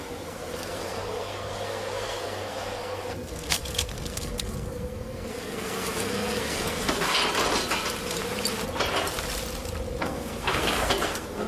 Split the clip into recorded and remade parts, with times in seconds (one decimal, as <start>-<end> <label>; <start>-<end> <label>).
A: 0.0-7.2 remade; 7.2-10.0 recorded; 10.0-11.5 remade